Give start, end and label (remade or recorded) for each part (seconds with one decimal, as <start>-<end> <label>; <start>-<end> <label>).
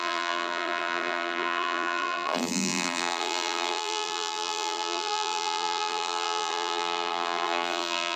0.0-8.2 remade